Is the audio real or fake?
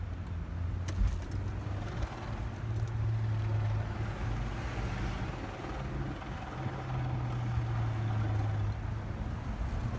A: real